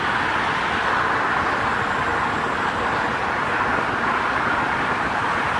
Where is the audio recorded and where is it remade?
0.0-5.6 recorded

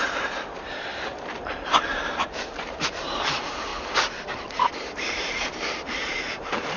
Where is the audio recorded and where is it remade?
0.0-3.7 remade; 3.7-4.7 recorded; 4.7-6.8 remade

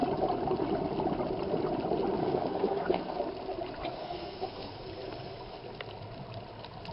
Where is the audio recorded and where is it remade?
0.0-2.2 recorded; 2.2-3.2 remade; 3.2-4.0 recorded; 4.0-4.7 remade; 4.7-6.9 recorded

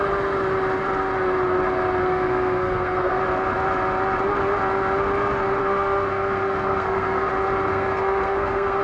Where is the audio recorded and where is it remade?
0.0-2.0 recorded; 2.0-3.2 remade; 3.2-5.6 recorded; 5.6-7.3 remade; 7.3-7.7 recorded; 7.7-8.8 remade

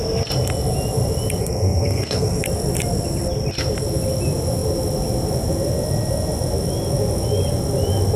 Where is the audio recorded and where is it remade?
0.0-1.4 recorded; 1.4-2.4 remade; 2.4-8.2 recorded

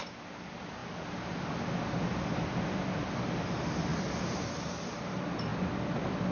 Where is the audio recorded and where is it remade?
0.0-0.8 recorded; 0.8-1.7 remade; 1.7-3.9 recorded; 3.9-5.0 remade; 5.0-6.3 recorded

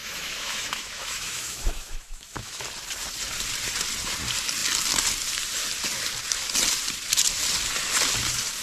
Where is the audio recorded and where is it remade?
0.0-2.6 remade; 2.6-8.6 recorded